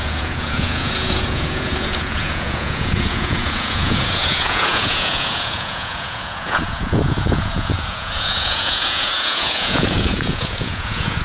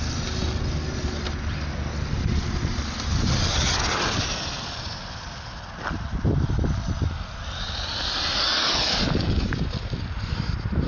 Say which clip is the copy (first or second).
first